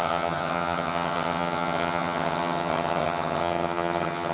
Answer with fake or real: fake